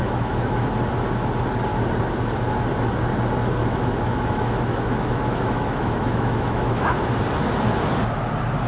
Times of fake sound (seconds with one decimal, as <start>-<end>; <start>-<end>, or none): 0.0-0.7; 3.6-7.1